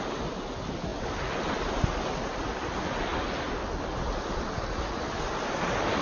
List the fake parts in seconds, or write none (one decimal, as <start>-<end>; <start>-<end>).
none

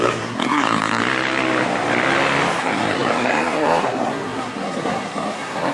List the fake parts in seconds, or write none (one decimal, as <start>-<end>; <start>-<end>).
0.0-1.0; 2.6-5.7

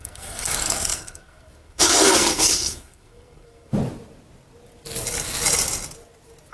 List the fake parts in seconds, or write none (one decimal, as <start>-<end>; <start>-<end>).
0.0-3.7

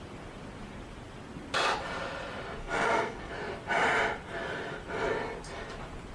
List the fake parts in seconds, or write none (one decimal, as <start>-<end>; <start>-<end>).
2.6-3.3

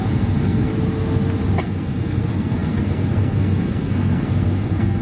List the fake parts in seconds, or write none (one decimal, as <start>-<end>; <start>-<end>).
0.0-0.7; 1.6-5.0